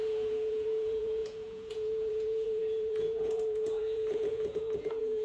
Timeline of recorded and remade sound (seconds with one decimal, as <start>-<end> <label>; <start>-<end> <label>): 0.0-5.2 remade